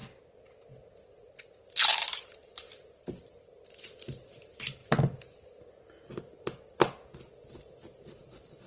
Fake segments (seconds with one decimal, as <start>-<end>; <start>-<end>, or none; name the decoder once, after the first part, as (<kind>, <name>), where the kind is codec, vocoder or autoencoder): 3.7-4.8 (vocoder, BigVGAN v2); 6.1-8.7